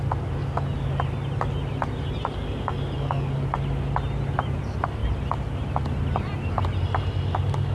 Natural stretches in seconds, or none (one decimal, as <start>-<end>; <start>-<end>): 0.0-7.7